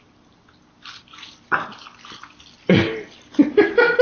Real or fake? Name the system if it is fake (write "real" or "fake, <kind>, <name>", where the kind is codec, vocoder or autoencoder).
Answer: fake, vocoder, BigVGAN v2